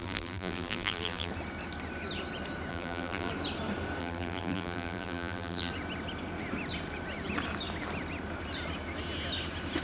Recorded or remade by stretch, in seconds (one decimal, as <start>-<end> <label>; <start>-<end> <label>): 0.0-1.3 remade; 1.3-2.7 recorded; 2.7-3.3 remade; 3.3-4.0 recorded; 4.0-5.7 remade; 5.7-9.8 recorded